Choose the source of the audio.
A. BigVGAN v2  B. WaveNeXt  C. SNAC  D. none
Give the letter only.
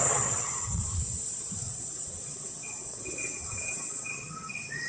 B